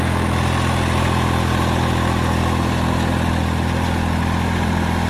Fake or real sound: real